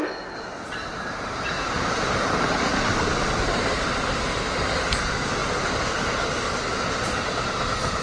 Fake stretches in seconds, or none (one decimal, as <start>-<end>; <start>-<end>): 0.9-3.8